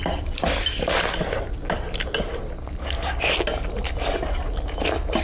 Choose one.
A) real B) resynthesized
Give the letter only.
A